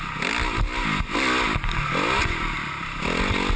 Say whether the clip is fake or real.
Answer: real